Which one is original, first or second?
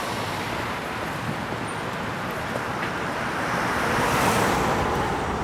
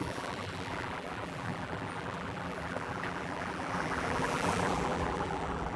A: first